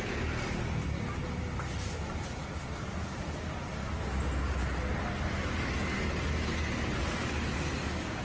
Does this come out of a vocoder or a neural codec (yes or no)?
no